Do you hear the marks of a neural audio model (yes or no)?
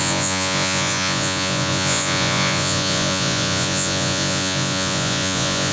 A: yes